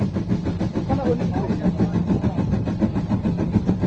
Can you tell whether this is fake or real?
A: real